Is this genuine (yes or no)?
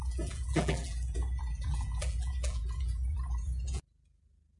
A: no